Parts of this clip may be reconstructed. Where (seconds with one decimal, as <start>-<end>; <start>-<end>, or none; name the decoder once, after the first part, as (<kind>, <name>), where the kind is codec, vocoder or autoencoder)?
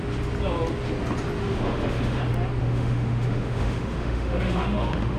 1.4-2.2 (autoencoder, DAC-VAE); 2.6-5.2